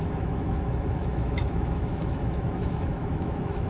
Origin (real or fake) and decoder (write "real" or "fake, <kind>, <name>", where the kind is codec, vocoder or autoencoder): fake, autoencoder, DAC-VAE